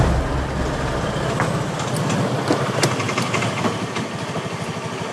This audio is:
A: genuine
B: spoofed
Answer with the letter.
A